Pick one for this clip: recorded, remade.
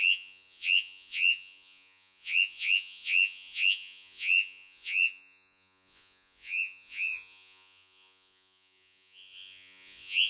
remade